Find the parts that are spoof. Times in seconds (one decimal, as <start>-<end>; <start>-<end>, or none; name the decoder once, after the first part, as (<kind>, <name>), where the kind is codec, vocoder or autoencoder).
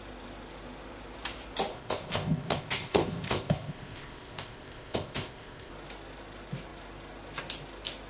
1.7-5.7 (codec, ZipCodec)